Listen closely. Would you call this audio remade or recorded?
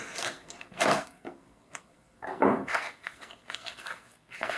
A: remade